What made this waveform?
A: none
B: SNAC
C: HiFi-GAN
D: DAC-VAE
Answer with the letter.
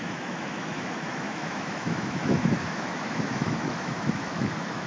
D